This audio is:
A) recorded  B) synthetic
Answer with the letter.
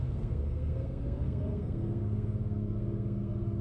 B